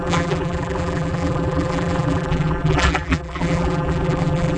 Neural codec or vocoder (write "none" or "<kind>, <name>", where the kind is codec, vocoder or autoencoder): vocoder, BigVGAN v2